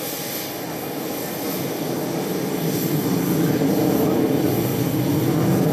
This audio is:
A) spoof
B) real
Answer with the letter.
B